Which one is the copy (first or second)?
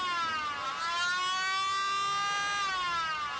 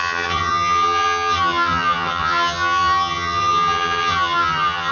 second